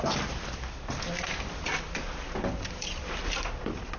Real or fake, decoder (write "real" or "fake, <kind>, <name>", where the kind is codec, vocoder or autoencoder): real